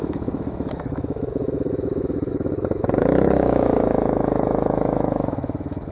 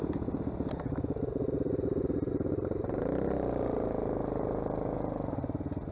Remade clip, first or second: first